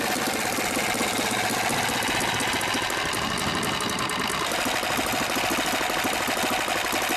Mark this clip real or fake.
real